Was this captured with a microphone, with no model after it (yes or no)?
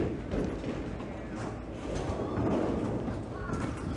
yes